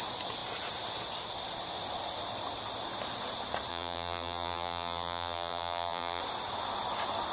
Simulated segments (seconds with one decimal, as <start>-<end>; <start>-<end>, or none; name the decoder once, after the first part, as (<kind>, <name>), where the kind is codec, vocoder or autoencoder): 3.7-6.2 (vocoder, BigVGAN v2)